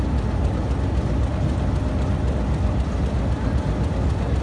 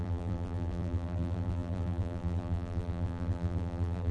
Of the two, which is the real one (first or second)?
first